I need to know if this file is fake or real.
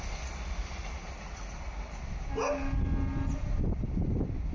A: real